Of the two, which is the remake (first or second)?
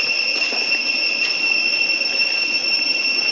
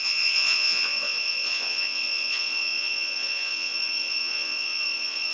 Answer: second